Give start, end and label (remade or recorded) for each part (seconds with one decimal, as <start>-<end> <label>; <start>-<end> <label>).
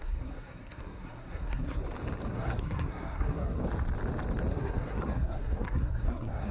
0.0-1.8 remade; 1.8-2.3 recorded; 2.3-3.6 remade; 3.6-4.5 recorded; 4.5-6.5 remade